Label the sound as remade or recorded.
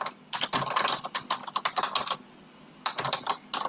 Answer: recorded